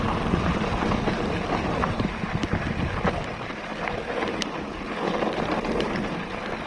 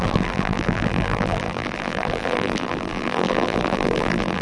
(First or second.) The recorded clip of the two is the first